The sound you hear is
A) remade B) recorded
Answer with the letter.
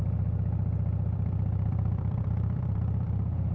A